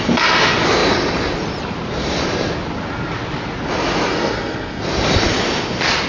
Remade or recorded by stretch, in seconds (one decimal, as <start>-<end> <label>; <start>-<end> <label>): 0.0-4.1 recorded; 4.1-4.8 remade; 4.8-6.1 recorded